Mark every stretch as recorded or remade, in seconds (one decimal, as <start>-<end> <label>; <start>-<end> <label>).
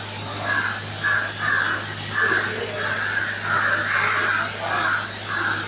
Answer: 0.0-5.7 recorded